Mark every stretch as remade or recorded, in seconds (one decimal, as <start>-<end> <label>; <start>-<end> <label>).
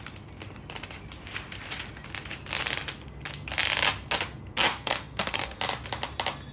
0.0-4.7 recorded; 4.7-5.6 remade; 5.6-6.5 recorded